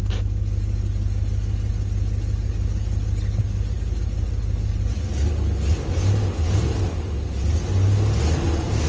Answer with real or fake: real